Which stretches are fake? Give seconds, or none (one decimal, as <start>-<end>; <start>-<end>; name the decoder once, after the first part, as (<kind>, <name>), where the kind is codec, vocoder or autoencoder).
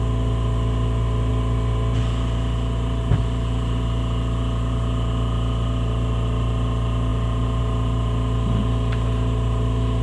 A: 1.3-3.2 (vocoder, BigVGAN v2)